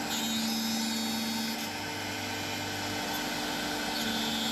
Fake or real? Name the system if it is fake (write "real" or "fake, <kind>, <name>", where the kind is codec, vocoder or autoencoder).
real